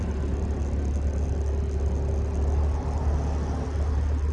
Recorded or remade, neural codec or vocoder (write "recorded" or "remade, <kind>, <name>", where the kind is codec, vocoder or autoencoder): recorded